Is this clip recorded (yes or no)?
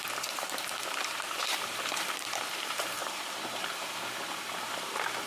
no